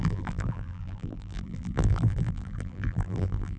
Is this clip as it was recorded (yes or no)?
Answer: no